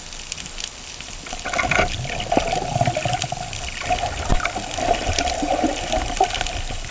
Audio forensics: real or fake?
real